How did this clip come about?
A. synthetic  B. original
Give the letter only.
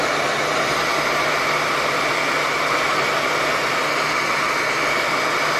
B